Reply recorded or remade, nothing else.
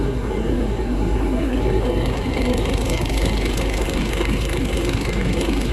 remade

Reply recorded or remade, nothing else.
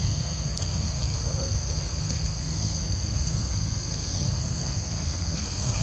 remade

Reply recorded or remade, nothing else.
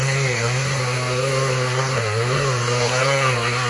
remade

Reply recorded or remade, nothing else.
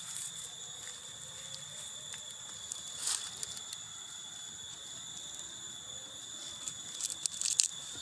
recorded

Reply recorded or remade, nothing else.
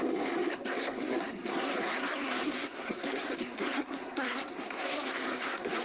remade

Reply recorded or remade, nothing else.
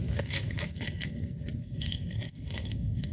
remade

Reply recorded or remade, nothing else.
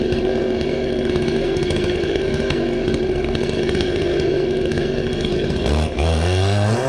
remade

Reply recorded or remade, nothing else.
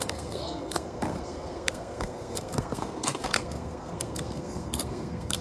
remade